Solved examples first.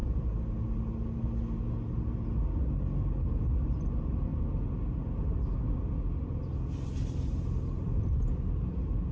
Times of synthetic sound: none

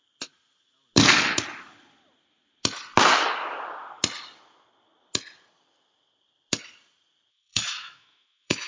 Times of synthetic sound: 7.3-8.7 (autoencoder, DAC-VAE)